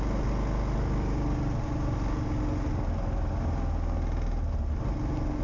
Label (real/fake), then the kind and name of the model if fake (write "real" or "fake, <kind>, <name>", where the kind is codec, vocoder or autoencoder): real